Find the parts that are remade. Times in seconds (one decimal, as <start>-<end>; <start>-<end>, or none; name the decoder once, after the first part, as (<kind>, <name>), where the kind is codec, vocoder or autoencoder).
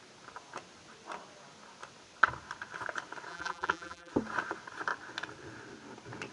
3.3-4.1 (vocoder, BigVGAN v2)